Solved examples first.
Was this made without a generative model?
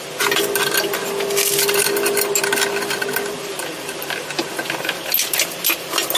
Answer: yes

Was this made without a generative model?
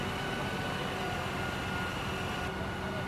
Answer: yes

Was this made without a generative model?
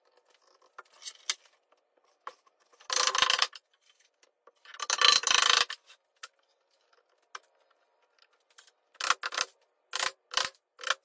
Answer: yes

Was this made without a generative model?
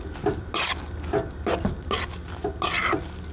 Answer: yes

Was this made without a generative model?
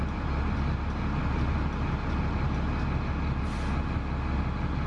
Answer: yes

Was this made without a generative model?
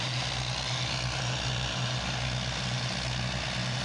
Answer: yes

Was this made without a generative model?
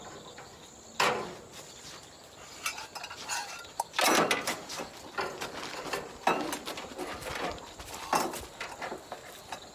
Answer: yes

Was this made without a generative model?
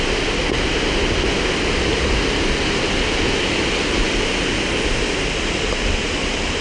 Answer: yes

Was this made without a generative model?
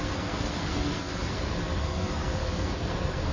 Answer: no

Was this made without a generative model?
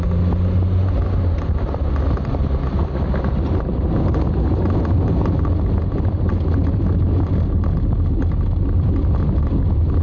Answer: yes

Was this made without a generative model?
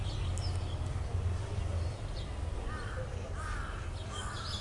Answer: yes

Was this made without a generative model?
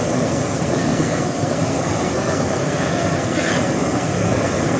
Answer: no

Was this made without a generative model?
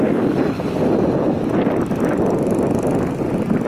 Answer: yes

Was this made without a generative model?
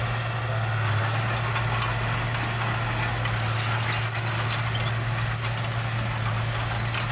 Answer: yes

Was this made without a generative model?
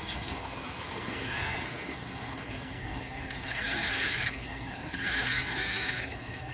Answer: no